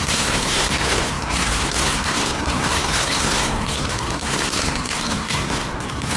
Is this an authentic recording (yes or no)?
no